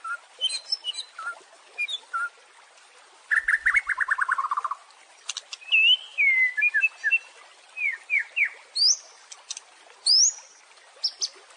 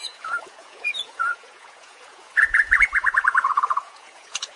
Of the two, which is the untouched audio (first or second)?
first